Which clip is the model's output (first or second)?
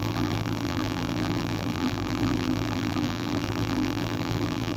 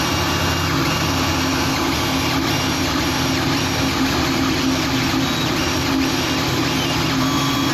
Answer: first